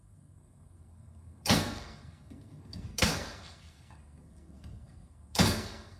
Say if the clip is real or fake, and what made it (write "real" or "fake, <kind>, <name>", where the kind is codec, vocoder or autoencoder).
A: fake, codec, SNAC